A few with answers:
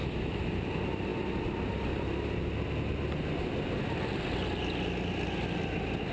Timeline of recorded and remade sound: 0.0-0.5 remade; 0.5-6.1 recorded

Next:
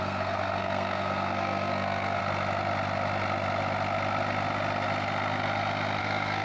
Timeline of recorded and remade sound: 0.0-2.2 remade; 2.2-6.0 recorded; 6.0-6.4 remade

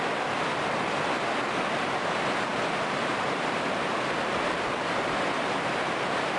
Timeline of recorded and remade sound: 0.0-6.4 recorded

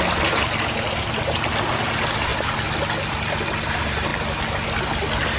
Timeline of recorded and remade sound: 0.0-5.4 recorded

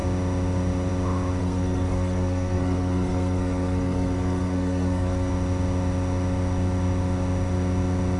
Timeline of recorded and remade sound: 0.0-1.4 recorded; 1.4-5.3 remade; 5.3-8.2 recorded

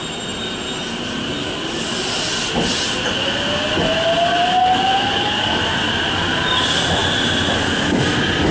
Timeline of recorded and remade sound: 0.0-1.4 recorded; 1.4-2.0 remade; 2.0-4.6 recorded; 4.6-5.6 remade; 5.6-8.5 recorded